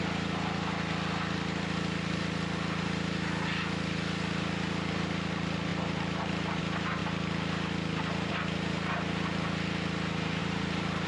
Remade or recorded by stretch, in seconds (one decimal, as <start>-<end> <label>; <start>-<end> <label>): 0.0-5.7 recorded; 5.7-6.6 remade; 6.6-10.4 recorded; 10.4-11.1 remade